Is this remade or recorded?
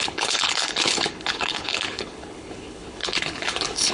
remade